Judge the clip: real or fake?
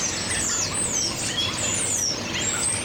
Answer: real